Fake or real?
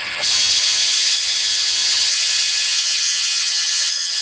fake